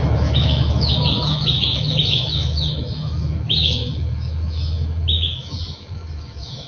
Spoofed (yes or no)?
yes